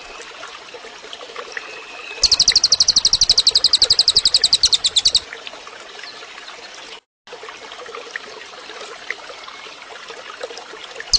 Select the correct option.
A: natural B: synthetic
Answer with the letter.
A